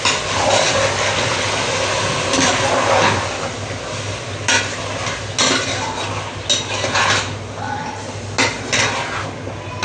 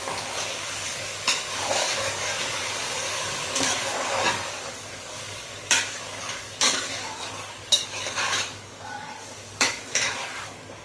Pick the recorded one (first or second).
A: first